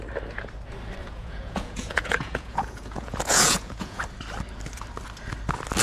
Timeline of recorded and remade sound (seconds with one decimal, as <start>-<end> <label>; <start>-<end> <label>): 0.0-1.0 recorded; 1.0-4.0 remade; 4.0-5.8 recorded